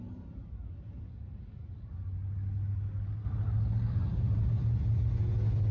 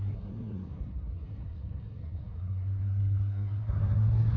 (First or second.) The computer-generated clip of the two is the second